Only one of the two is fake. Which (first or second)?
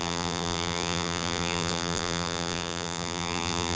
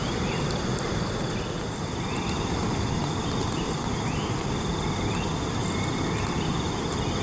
first